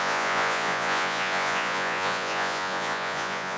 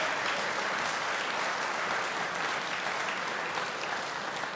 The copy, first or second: first